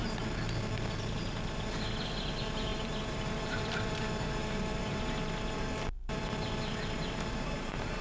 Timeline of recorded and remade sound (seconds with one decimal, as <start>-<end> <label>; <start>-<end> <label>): 0.0-2.0 recorded; 2.0-8.0 remade